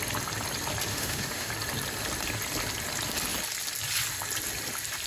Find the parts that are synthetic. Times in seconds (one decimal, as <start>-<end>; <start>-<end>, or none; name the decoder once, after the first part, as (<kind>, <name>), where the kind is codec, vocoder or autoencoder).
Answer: 0.9-1.5 (autoencoder, DAC-VAE)